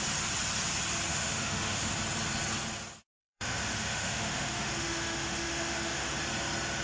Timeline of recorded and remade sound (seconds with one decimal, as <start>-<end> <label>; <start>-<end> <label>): 0.0-1.1 recorded; 1.1-1.9 remade; 1.9-3.2 recorded; 3.2-6.2 remade; 6.2-6.8 recorded

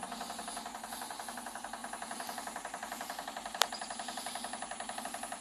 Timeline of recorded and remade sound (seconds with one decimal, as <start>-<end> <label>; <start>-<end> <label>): 0.0-5.4 recorded